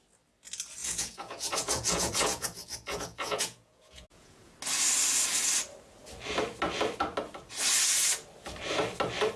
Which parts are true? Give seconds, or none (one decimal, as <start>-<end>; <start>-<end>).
0.0-0.8; 4.5-9.4